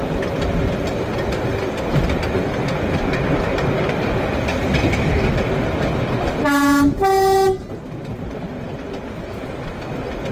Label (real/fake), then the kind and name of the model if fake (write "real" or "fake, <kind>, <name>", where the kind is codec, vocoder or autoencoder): real